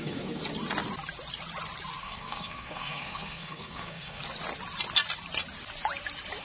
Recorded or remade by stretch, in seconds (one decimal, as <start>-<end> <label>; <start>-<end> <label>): 0.0-0.4 remade; 0.4-2.0 recorded; 2.0-4.2 remade; 4.2-6.4 recorded